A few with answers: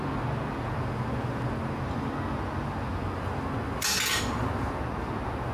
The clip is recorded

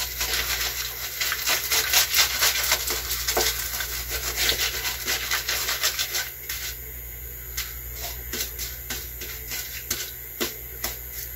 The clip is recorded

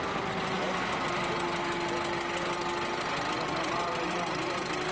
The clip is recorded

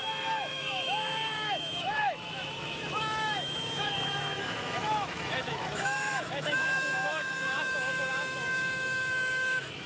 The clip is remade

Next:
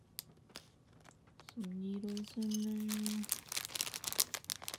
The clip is recorded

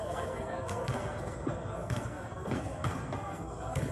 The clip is remade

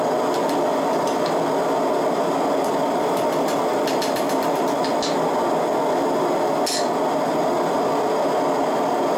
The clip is recorded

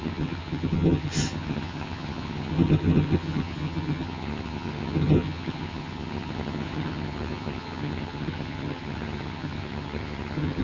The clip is remade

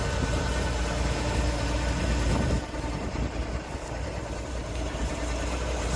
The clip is remade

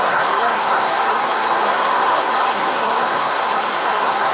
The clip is remade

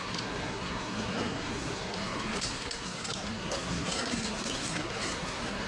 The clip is remade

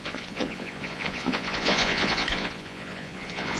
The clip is remade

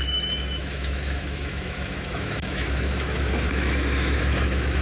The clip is remade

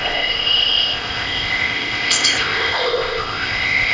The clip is remade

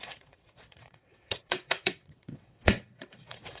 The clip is remade